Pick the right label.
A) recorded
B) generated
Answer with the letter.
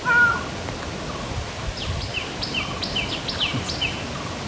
A